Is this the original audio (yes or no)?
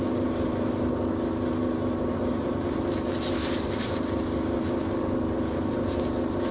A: yes